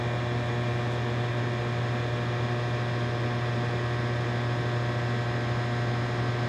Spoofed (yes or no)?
no